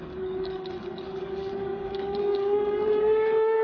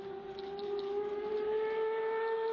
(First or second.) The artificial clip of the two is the first